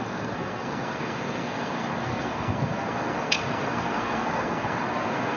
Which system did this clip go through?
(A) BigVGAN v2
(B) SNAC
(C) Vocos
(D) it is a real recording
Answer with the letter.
B